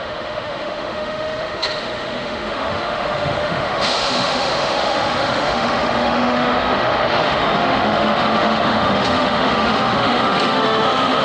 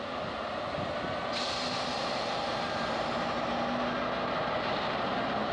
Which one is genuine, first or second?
second